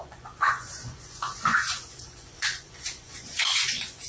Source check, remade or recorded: remade